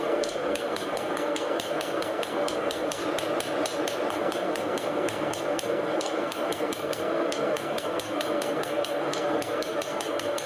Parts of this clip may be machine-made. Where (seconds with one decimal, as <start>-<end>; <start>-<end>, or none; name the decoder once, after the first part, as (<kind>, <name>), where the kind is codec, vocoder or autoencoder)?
0.0-3.0 (codec, SNAC); 4.1-10.5